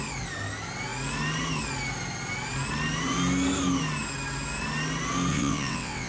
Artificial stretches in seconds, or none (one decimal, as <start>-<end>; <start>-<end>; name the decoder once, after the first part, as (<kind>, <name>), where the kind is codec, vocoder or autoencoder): 5.3-6.1 (vocoder, WaveNeXt)